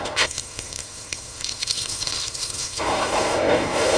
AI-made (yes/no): yes